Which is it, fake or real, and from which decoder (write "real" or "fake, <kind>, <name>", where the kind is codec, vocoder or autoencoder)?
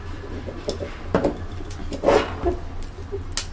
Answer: real